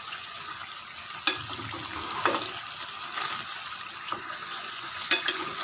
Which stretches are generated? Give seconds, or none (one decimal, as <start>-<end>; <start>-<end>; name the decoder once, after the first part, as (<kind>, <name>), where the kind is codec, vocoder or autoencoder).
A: 0.0-0.6 (vocoder, Vocos); 4.0-5.6